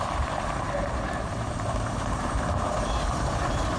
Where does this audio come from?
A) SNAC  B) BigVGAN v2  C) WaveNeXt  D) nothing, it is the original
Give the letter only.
B